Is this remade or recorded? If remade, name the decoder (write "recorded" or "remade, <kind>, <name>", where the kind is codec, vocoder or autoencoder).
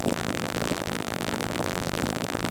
remade, vocoder, BigVGAN v2